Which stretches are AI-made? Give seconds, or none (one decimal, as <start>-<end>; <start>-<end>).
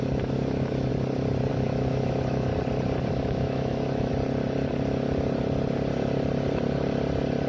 0.0-0.9; 1.5-2.5; 3.1-4.1